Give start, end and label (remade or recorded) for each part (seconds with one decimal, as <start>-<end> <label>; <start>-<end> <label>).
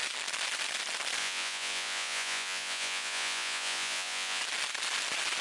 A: 0.0-1.2 recorded; 1.2-4.4 remade; 4.4-5.4 recorded